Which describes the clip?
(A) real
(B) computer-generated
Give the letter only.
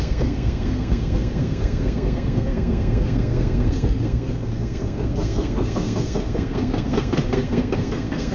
B